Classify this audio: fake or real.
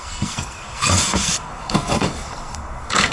fake